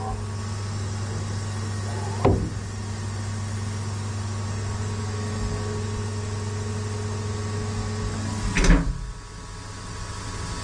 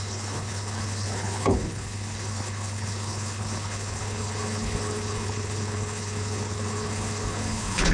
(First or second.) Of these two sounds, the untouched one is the first